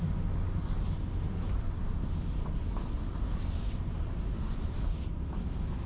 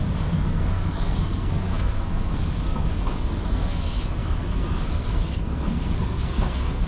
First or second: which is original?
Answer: first